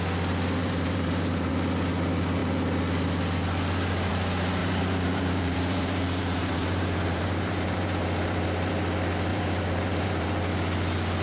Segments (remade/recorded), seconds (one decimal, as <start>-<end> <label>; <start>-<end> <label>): 0.0-0.6 recorded; 0.6-1.5 remade; 1.5-4.6 recorded; 4.6-8.7 remade; 8.7-9.3 recorded; 9.3-10.4 remade; 10.4-11.2 recorded